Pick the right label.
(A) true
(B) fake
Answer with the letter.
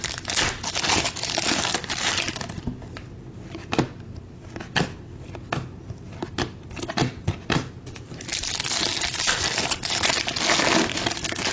A